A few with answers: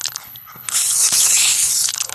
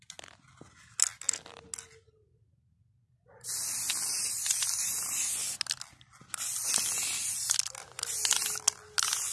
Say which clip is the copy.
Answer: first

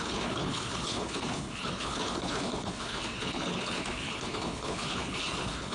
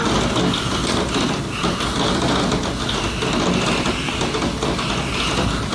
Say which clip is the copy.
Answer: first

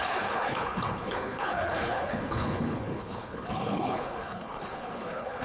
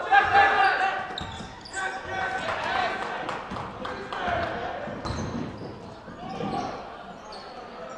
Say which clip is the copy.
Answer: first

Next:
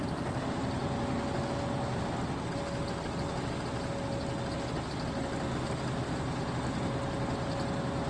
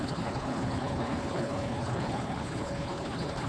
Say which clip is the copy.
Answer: second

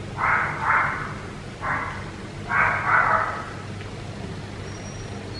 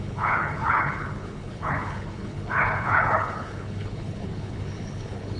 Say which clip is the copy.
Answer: second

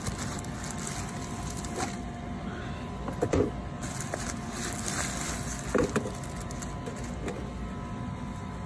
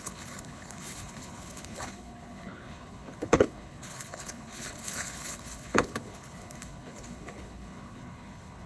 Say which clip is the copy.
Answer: second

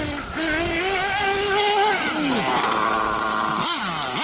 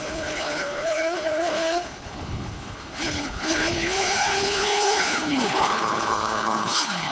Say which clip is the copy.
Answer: second